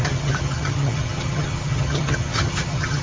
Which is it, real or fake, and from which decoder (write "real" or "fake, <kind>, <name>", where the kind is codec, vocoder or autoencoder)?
fake, vocoder, HiFi-GAN